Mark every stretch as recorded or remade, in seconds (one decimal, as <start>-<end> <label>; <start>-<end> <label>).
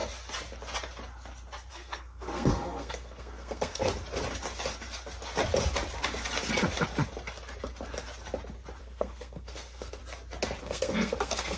0.0-1.7 recorded; 1.7-3.9 remade; 3.9-8.8 recorded; 8.8-10.0 remade; 10.0-10.6 recorded; 10.6-11.6 remade